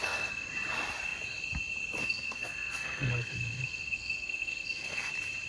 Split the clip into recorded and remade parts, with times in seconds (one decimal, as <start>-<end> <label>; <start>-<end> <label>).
0.0-0.5 remade; 0.5-2.0 recorded; 2.0-5.1 remade; 5.1-5.5 recorded